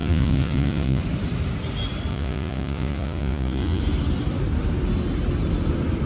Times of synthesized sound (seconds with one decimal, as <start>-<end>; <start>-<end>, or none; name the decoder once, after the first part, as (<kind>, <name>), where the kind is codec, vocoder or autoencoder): 0.0-1.0 (vocoder, Vocos); 2.1-3.8